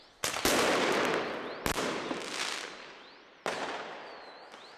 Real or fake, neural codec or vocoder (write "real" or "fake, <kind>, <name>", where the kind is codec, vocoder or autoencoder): real